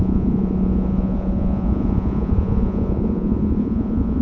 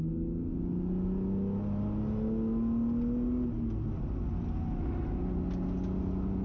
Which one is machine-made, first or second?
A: first